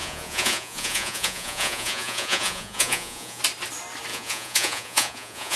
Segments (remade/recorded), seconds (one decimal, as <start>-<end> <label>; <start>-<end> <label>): 0.0-3.4 remade; 3.4-4.1 recorded; 4.1-5.6 remade